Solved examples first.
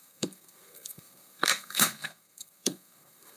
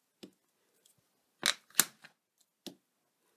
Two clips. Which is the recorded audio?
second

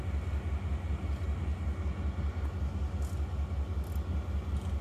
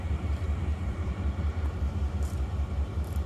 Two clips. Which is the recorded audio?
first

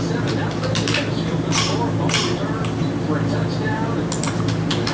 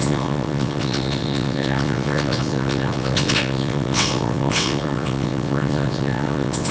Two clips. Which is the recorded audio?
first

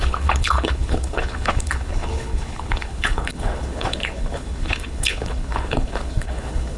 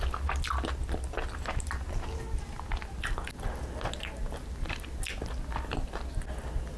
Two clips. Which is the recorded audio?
second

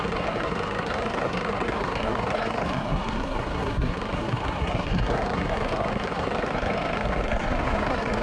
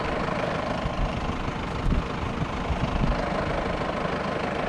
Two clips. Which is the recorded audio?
second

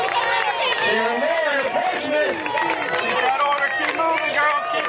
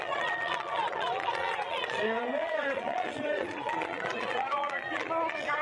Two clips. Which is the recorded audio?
first